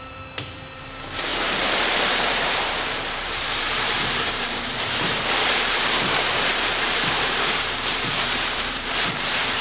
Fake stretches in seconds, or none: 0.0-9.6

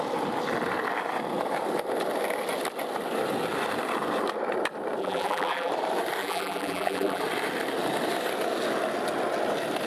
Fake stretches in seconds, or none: 5.0-5.7; 6.2-7.2

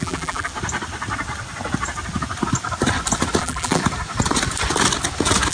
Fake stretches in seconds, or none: 0.0-0.5; 3.4-3.8

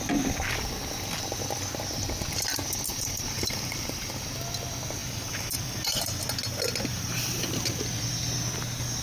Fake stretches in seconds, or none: 2.9-4.1; 5.0-6.2; 6.9-7.8